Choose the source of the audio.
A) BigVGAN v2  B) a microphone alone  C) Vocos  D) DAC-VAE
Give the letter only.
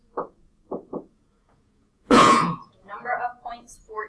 C